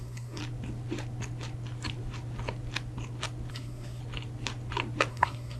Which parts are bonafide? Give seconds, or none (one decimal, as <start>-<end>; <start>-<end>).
0.4-3.5; 4.0-5.1